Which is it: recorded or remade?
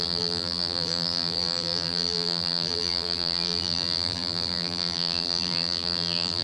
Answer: remade